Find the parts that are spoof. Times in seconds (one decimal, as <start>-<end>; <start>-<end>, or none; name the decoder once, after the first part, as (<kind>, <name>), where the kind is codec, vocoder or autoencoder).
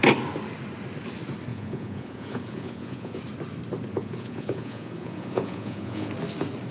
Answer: 1.5-3.2 (vocoder, Vocos); 3.9-6.1